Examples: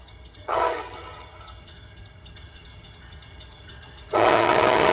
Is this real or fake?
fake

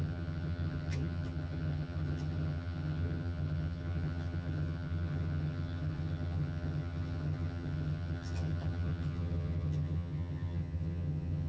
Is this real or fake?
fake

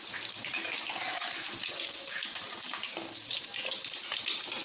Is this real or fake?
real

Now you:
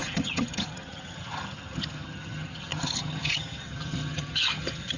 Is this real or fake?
fake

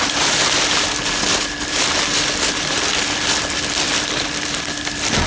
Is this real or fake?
real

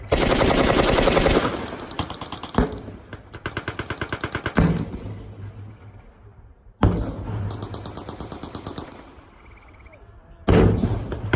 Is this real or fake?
real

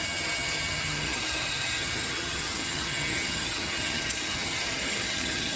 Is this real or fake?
fake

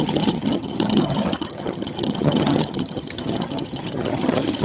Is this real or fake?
fake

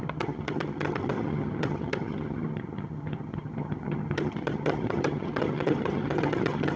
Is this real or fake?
fake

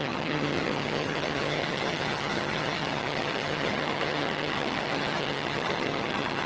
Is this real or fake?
fake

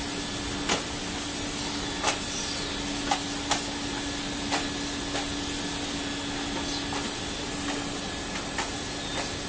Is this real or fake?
real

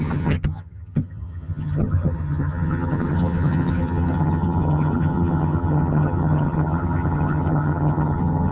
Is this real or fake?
fake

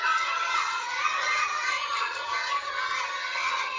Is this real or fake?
fake